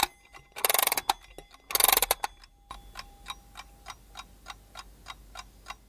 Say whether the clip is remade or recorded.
recorded